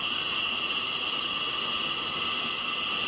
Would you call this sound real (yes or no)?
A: yes